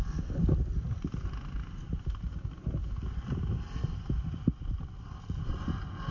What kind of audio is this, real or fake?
real